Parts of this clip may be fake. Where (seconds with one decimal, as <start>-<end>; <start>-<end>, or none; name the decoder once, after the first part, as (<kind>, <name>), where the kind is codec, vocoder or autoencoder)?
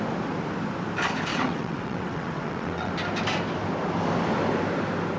1.3-2.9 (vocoder, WaveNeXt)